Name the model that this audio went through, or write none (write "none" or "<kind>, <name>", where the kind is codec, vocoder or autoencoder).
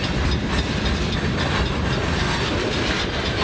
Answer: vocoder, BigVGAN v2